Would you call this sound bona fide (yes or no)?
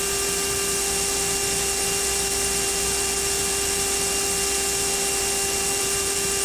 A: no